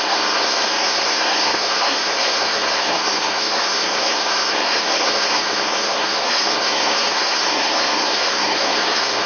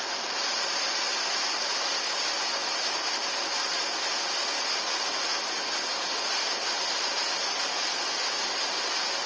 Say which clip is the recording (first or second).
second